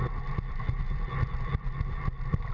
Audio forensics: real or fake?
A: fake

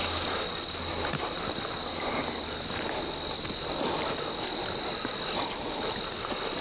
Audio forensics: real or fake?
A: real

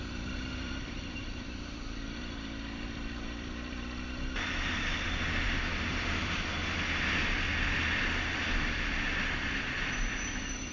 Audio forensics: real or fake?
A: fake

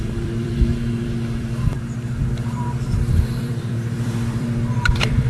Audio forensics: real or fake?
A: fake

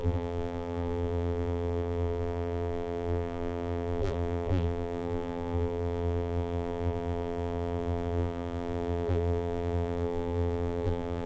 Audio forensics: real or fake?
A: fake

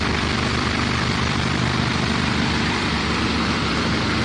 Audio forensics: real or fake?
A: fake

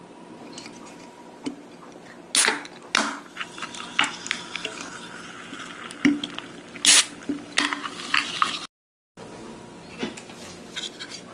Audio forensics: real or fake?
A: real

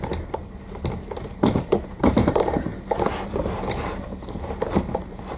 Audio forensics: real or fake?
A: fake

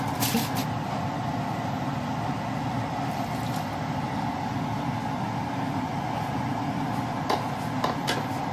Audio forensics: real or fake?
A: real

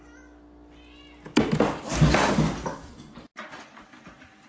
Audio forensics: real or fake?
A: real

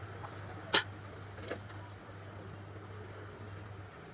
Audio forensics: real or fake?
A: real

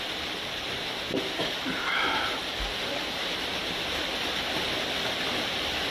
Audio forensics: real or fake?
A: fake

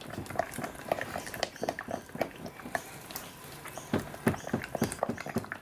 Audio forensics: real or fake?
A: fake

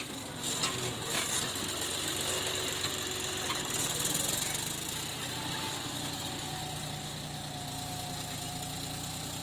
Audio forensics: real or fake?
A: real